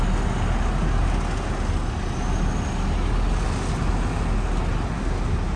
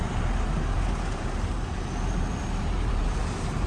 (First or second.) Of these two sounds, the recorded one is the first